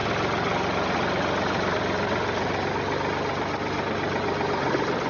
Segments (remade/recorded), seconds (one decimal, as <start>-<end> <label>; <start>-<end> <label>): 0.0-5.1 recorded